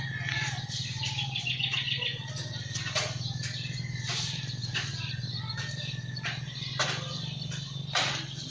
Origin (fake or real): real